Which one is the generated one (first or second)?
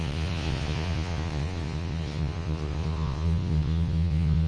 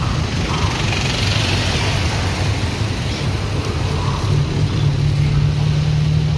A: first